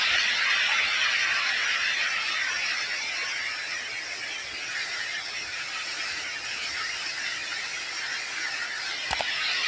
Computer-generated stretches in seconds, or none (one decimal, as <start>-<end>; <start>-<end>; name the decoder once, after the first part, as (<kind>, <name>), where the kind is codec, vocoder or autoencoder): none